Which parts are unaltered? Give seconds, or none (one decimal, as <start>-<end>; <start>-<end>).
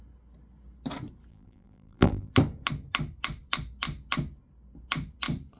0.0-1.3; 2.3-5.6